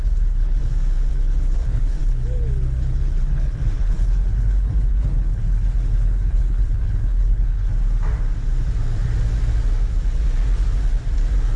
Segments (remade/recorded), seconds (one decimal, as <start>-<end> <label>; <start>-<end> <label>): 0.0-0.6 remade; 0.6-1.1 recorded; 1.1-7.7 remade; 7.7-11.6 recorded